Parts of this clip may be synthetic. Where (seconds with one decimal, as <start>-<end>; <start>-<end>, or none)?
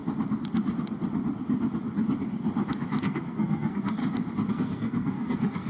3.0-4.0; 4.5-5.7